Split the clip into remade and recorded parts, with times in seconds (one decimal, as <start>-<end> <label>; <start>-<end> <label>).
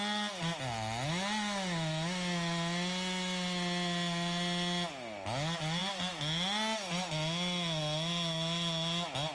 0.0-9.3 recorded